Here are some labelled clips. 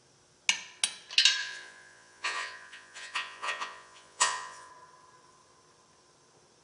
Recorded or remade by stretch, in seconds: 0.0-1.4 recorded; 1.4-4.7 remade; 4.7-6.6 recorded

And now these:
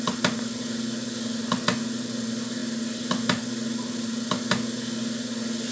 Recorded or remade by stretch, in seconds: 0.0-5.7 recorded

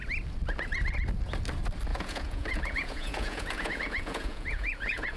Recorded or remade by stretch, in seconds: 0.0-1.9 recorded; 1.9-5.2 remade

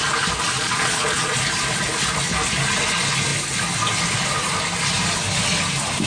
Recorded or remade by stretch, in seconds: 0.0-0.5 recorded; 0.5-1.4 remade; 1.4-6.1 recorded

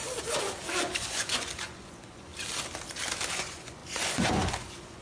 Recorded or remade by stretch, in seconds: 0.0-1.0 recorded; 1.0-2.3 remade; 2.3-3.3 recorded; 3.3-5.0 remade

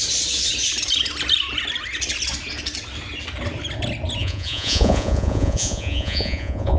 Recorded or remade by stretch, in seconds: 0.0-4.2 recorded; 4.2-6.8 remade

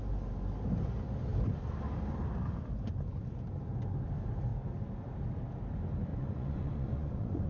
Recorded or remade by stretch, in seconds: 0.0-6.1 recorded; 6.1-7.5 remade